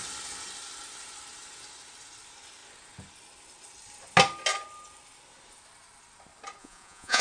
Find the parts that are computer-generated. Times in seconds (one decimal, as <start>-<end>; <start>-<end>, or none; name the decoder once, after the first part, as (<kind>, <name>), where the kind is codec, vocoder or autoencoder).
6.6-7.2 (vocoder, Vocos)